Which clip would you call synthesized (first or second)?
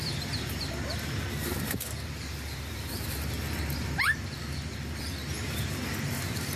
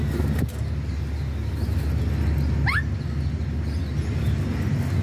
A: first